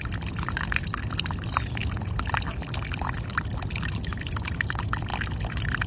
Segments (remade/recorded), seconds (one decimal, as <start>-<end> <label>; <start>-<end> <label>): 0.0-5.9 recorded